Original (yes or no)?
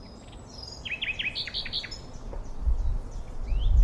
yes